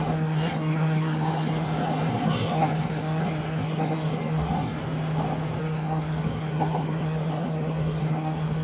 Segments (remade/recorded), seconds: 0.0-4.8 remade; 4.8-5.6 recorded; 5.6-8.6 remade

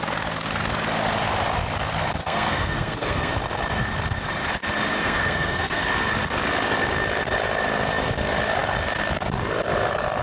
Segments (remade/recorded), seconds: 0.0-2.2 recorded; 2.2-3.3 remade; 3.3-5.0 recorded; 5.0-5.8 remade; 5.8-10.2 recorded

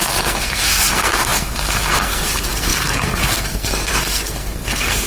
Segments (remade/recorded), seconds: 0.0-5.1 remade

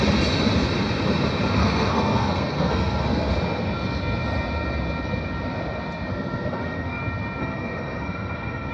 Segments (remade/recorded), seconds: 0.0-1.6 recorded; 1.6-3.3 remade; 3.3-6.1 recorded; 6.1-7.0 remade; 7.0-7.4 recorded; 7.4-8.7 remade